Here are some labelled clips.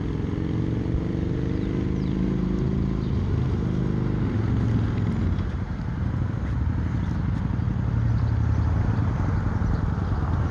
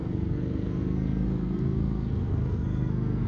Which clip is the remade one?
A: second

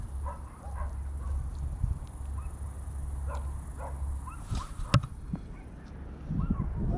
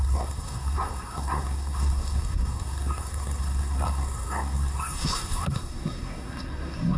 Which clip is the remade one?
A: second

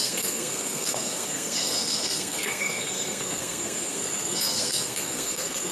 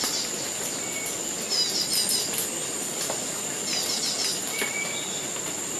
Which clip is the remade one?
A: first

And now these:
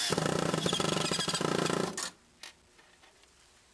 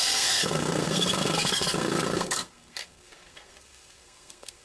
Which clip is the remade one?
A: second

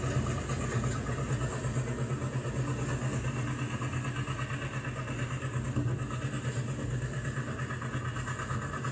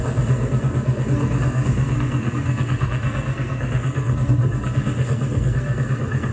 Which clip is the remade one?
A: second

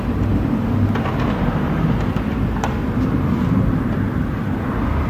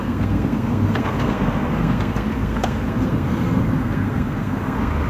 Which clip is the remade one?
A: second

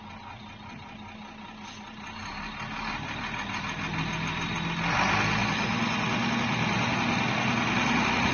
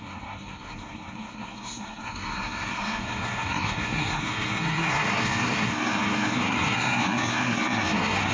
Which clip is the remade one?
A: second